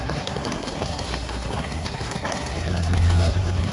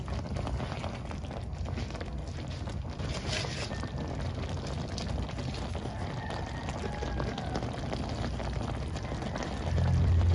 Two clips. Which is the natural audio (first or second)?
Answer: second